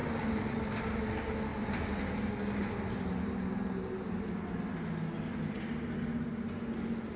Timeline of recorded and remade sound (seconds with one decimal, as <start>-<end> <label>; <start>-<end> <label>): 0.0-1.0 remade; 1.0-7.2 recorded

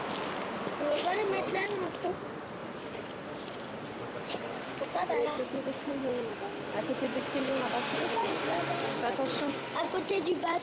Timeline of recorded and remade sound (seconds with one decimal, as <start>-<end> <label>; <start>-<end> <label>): 0.0-2.6 recorded; 2.6-5.1 remade; 5.1-10.6 recorded

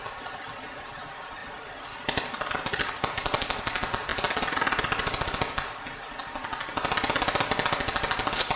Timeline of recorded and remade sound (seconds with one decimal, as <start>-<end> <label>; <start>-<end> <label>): 0.0-1.4 recorded; 1.4-2.4 remade; 2.4-4.1 recorded; 4.1-4.8 remade; 4.8-8.6 recorded

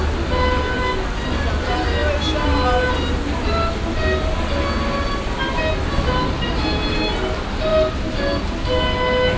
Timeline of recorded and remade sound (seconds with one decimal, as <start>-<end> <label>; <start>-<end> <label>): 0.0-9.4 recorded